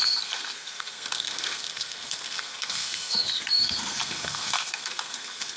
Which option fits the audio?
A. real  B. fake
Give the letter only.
B